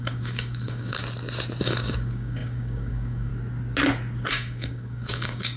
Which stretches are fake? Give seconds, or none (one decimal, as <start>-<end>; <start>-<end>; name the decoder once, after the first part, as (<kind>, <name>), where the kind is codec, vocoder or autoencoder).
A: 0.0-1.0 (codec, DAC); 1.6-3.3; 4.3-5.6